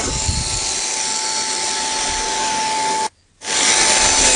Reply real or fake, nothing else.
real